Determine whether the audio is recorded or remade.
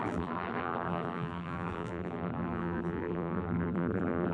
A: remade